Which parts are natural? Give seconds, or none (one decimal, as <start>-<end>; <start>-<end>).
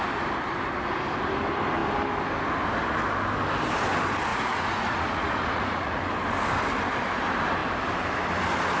0.0-4.3; 6.0-8.8